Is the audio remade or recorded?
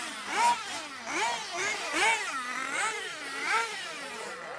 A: recorded